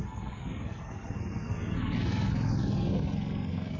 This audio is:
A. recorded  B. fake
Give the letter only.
B